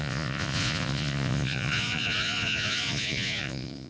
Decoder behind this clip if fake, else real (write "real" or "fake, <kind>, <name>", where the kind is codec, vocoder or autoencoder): fake, vocoder, Vocos